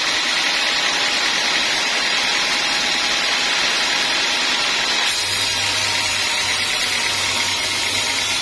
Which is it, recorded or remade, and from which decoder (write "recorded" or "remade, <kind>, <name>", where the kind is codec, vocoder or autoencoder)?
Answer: recorded